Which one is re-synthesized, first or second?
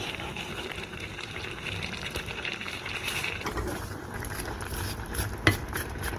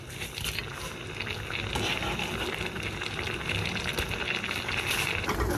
first